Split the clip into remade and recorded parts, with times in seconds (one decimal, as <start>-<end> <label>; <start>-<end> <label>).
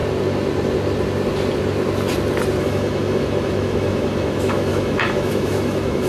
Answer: 0.0-2.6 recorded; 2.6-6.1 remade